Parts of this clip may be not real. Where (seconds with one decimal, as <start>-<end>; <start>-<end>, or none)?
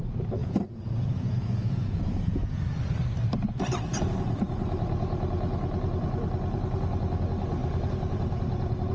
0.4-2.6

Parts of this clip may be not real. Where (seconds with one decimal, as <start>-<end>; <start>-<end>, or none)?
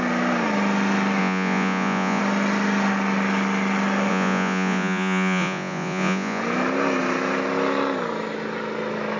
1.2-2.2; 4.1-6.4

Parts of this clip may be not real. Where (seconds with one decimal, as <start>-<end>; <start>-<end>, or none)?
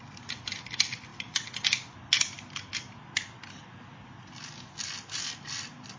none